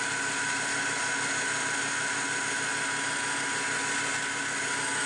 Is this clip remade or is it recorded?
recorded